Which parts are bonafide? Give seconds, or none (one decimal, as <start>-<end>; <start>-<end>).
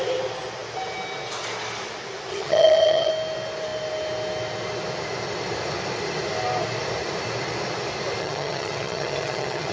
0.0-2.3; 3.1-8.2